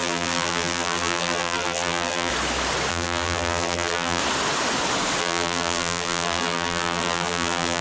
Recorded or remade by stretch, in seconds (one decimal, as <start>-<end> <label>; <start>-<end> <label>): 0.0-2.3 remade; 2.3-2.9 recorded; 2.9-4.2 remade; 4.2-5.2 recorded; 5.2-7.8 remade